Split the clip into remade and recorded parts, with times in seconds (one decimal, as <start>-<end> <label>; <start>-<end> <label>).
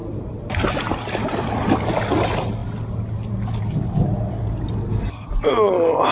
0.0-1.4 remade; 1.4-6.1 recorded